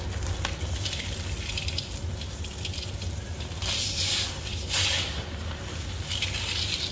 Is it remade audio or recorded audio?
recorded